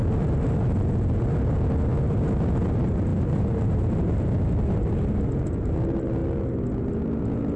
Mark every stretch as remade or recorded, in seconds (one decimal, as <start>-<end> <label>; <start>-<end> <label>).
0.0-3.1 recorded; 3.1-3.8 remade; 3.8-7.6 recorded